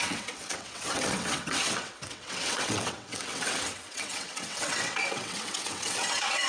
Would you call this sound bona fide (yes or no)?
no